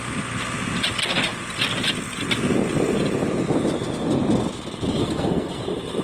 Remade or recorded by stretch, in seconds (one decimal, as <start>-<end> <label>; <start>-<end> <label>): 0.0-5.0 recorded; 5.0-5.6 remade; 5.6-6.0 recorded